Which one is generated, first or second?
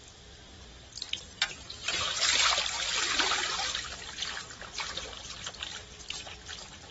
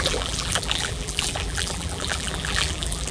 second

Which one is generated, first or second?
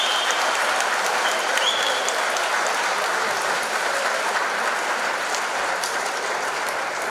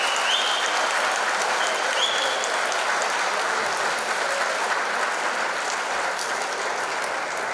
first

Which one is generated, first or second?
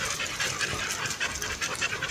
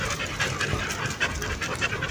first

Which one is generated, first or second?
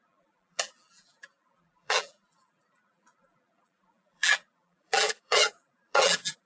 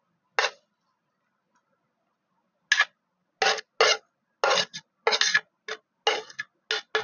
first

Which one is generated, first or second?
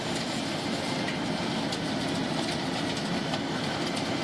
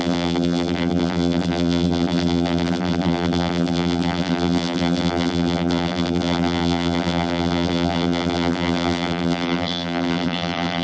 second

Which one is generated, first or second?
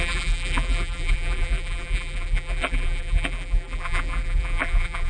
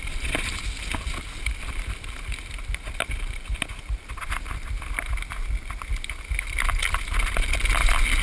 first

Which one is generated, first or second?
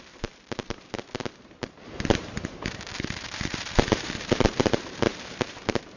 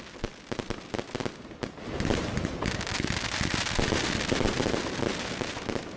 first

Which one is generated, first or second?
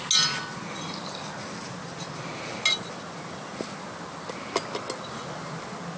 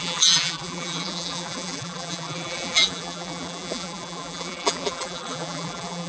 second